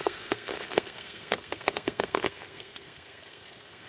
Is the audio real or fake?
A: fake